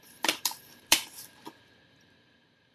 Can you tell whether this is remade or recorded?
remade